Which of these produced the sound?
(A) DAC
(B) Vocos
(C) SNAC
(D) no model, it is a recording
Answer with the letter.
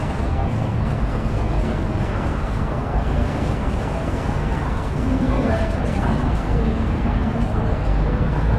C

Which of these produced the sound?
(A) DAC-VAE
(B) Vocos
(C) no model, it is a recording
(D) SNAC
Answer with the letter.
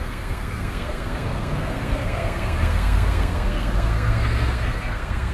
D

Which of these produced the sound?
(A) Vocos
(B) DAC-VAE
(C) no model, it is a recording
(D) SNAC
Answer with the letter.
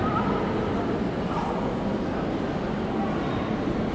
C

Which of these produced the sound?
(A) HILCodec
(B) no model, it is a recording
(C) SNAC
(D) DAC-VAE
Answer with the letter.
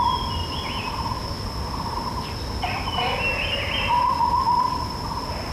B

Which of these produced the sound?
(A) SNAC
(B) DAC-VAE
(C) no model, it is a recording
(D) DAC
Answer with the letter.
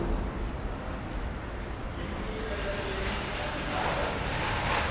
C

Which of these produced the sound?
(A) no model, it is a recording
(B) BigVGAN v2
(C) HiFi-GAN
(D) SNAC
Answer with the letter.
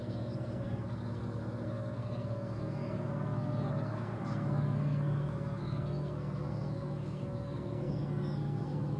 D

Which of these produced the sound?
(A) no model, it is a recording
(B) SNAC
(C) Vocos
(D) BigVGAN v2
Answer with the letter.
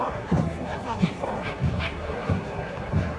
B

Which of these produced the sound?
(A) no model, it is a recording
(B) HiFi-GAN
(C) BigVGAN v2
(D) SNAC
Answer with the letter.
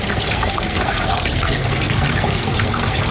D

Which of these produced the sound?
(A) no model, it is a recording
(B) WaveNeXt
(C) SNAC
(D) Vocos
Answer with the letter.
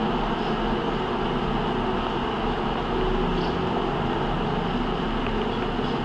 A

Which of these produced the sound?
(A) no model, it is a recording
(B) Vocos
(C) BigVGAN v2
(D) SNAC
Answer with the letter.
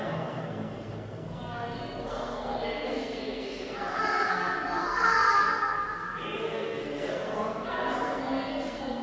D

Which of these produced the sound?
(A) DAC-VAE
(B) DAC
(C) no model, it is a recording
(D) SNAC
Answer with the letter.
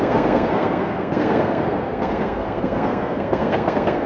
D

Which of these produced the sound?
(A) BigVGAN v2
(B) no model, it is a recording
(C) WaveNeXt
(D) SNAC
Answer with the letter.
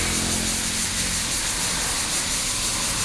B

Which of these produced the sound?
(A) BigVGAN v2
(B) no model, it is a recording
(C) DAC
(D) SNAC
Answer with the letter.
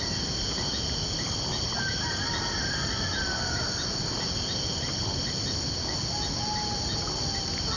B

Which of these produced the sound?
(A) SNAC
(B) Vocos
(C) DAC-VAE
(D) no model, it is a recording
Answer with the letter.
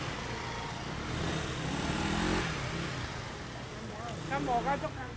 D